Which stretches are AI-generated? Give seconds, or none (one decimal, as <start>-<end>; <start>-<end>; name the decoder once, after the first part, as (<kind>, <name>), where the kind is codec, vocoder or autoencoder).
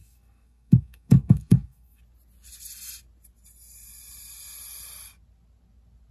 0.0-2.0 (codec, SNAC)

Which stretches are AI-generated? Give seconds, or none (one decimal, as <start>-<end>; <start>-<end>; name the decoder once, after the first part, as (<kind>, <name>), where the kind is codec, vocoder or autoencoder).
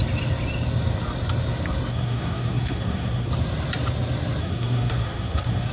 1.9-3.3 (codec, SNAC); 4.4-5.7